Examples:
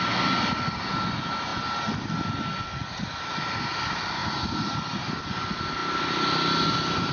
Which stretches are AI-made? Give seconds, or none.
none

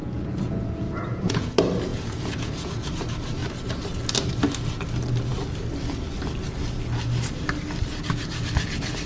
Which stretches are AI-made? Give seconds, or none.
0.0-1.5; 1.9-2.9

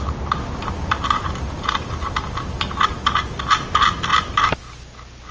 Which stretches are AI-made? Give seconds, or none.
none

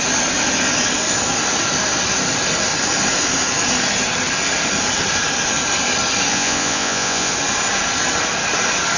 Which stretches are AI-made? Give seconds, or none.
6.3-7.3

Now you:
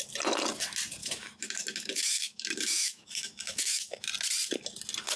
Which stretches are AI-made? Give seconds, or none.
1.0-4.1

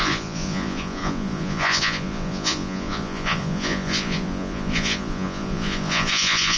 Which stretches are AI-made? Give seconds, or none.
0.0-6.6